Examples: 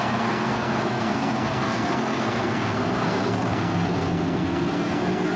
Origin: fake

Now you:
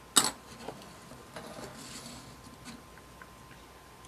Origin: real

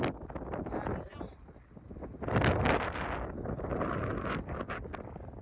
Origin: real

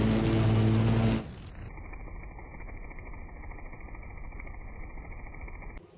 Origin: real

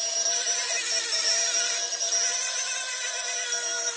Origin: real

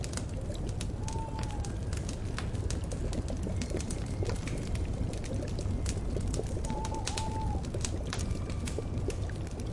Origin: real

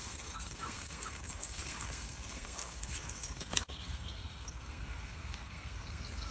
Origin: fake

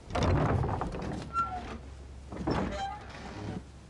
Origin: real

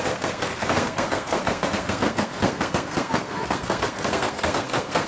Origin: fake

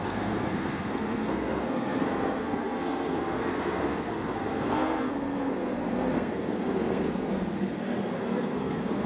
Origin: fake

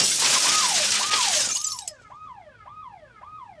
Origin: real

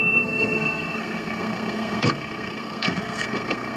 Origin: fake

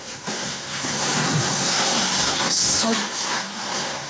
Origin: fake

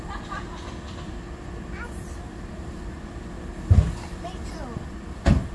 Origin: real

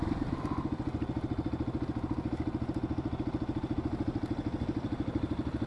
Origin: real